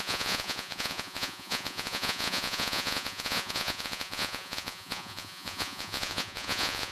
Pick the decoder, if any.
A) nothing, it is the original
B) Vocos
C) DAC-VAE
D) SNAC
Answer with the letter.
B